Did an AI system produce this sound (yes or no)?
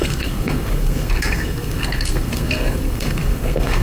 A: yes